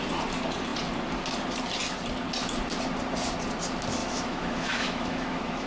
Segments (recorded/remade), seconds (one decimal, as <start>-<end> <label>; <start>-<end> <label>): 0.0-4.0 recorded; 4.0-5.7 remade